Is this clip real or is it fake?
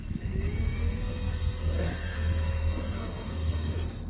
fake